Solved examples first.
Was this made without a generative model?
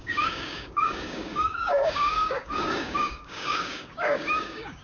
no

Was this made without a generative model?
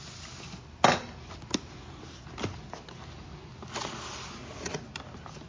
yes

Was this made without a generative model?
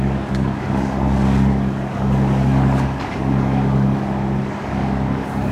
no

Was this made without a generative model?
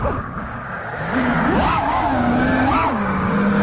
no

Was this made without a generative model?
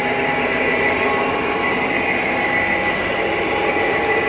yes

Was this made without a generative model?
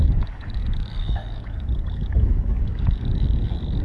no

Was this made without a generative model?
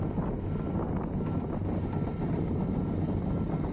yes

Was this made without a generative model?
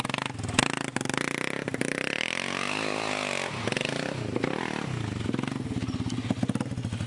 yes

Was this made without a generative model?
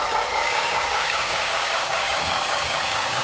no